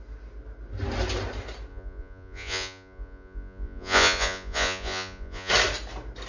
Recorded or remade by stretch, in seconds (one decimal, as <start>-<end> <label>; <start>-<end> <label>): 0.0-1.7 recorded; 1.7-5.5 remade; 5.5-6.3 recorded